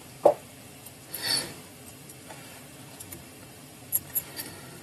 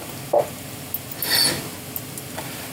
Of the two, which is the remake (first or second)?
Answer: first